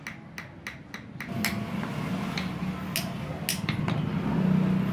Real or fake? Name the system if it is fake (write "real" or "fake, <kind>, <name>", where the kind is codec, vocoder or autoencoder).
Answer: real